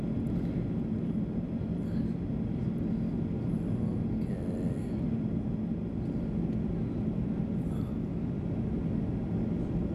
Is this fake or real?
real